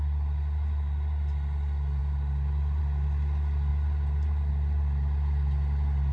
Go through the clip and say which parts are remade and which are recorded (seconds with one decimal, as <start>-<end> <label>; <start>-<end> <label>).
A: 0.0-6.1 recorded